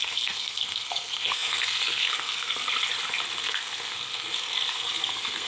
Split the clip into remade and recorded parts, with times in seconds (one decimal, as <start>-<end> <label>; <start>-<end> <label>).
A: 0.0-2.6 remade; 2.6-3.4 recorded; 3.4-5.5 remade